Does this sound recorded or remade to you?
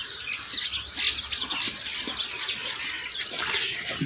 recorded